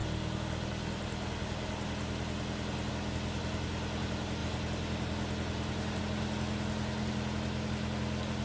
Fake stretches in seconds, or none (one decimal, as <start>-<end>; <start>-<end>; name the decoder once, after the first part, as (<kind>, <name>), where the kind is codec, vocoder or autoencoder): none